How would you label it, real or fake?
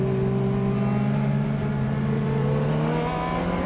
real